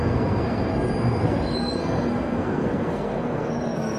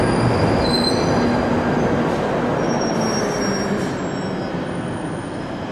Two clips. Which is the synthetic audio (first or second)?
first